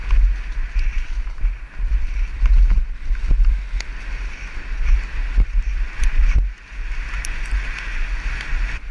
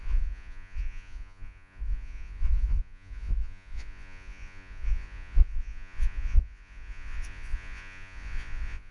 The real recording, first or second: first